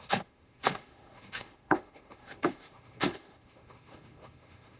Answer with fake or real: fake